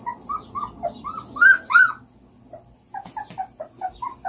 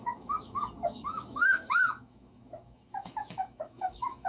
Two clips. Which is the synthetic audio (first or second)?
second